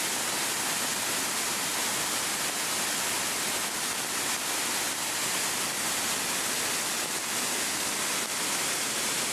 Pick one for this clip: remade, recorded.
recorded